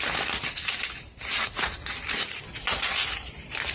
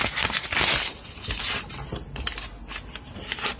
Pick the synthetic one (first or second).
second